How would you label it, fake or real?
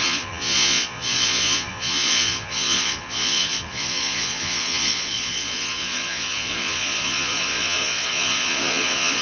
fake